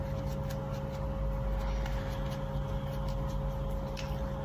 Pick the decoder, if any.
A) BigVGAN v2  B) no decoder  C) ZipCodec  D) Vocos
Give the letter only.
B